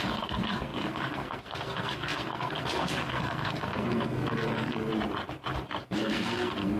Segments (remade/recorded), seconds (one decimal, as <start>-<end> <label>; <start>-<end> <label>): 0.0-4.9 remade; 4.9-5.8 recorded; 5.8-6.8 remade